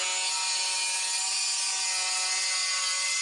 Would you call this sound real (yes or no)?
yes